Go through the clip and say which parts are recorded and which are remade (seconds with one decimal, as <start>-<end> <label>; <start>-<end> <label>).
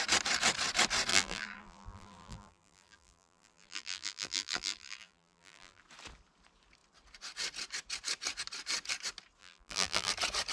0.0-1.1 recorded; 1.1-5.8 remade; 5.8-9.4 recorded; 9.4-10.1 remade; 10.1-10.5 recorded